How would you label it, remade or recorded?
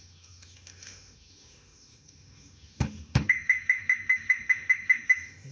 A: remade